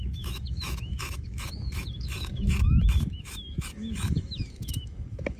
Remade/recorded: remade